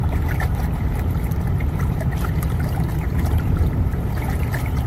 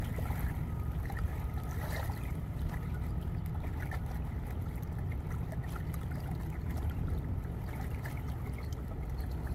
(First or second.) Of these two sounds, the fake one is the first